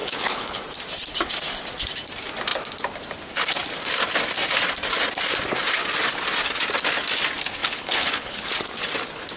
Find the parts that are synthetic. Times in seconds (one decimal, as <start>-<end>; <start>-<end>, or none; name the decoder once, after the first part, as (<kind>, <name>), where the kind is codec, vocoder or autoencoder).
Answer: 0.0-0.6 (codec, HILCodec); 7.6-8.5